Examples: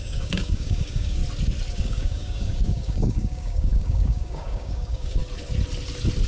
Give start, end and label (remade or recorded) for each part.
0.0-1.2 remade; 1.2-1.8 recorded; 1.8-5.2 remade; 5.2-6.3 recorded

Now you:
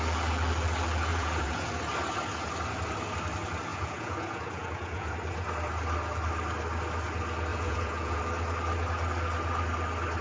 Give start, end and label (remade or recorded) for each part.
0.0-1.1 recorded; 1.1-1.7 remade; 1.7-3.7 recorded; 3.7-5.1 remade; 5.1-7.5 recorded; 7.5-8.2 remade; 8.2-10.2 recorded

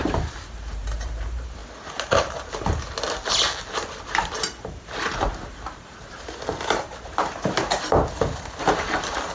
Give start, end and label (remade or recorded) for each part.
0.0-1.6 remade; 1.6-5.2 recorded; 5.2-9.3 remade

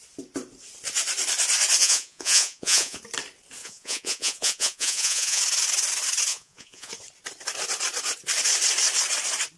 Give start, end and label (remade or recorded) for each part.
0.0-1.8 recorded; 1.8-3.0 remade; 3.0-3.6 recorded; 3.6-5.4 remade; 5.4-6.3 recorded; 6.3-6.9 remade; 6.9-9.6 recorded

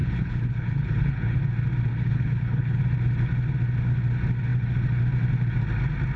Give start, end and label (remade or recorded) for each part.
0.0-1.4 remade; 1.4-1.9 recorded; 1.9-2.8 remade; 2.8-6.2 recorded